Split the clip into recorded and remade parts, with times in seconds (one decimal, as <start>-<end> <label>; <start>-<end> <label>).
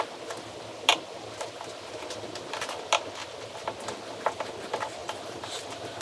0.0-5.0 recorded; 5.0-6.0 remade